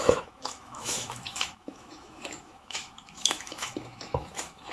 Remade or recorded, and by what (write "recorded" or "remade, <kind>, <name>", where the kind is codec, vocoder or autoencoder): remade, autoencoder, DAC-VAE